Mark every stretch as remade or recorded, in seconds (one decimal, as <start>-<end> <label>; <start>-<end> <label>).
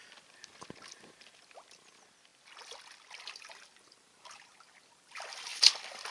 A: 0.0-6.1 recorded